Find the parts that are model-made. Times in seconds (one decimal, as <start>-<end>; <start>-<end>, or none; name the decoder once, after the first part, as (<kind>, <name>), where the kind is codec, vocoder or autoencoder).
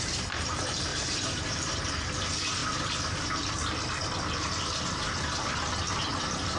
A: 0.9-1.8 (vocoder, BigVGAN v2)